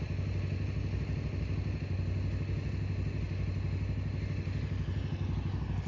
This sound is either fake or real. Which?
real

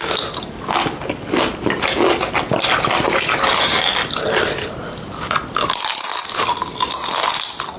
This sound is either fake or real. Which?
real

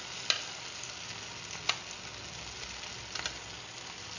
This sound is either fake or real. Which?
real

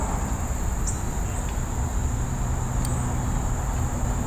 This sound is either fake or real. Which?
real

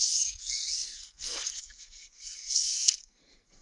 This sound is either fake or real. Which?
fake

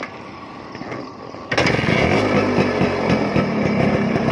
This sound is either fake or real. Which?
real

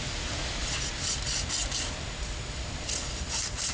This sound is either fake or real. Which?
real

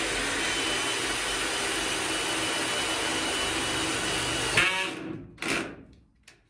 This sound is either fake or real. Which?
real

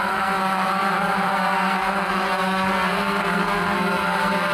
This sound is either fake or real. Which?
fake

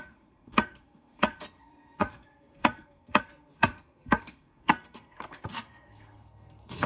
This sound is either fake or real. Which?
fake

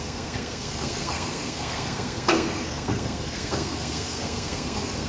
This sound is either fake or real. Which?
fake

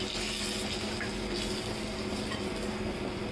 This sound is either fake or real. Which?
real